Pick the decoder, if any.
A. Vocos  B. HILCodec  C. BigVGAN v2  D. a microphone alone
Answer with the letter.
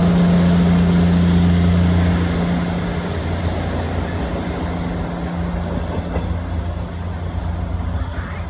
D